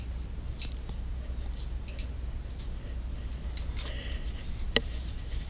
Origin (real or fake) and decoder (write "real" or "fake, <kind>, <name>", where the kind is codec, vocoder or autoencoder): real